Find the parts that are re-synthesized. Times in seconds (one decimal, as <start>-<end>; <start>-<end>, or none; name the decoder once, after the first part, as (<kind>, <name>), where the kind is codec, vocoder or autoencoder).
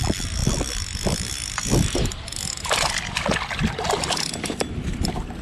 none